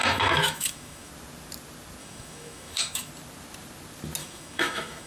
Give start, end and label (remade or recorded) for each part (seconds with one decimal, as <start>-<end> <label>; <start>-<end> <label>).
0.0-1.1 remade; 1.1-2.0 recorded; 2.0-3.1 remade; 3.1-4.2 recorded; 4.2-5.1 remade